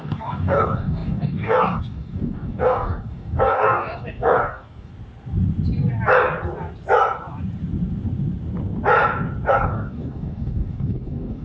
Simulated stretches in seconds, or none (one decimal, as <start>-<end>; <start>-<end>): 0.0-4.9; 9.5-11.4